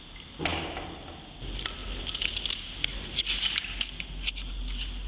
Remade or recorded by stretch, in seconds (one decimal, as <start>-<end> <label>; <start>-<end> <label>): 0.0-5.1 recorded

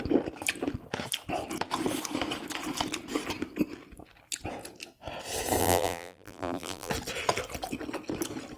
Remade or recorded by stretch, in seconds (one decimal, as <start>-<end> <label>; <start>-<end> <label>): 0.0-5.6 recorded; 5.6-6.9 remade; 6.9-8.6 recorded